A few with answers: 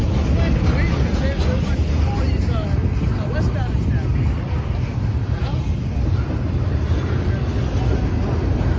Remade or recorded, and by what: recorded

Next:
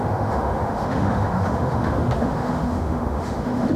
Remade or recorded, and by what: remade, autoencoder, DAC-VAE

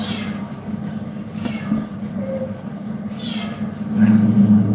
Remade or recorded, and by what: recorded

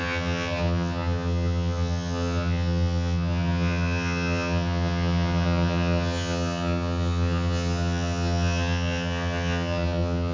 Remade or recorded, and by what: remade, vocoder, HiFi-GAN